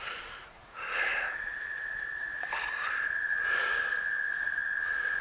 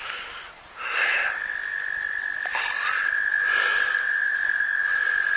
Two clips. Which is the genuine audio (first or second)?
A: second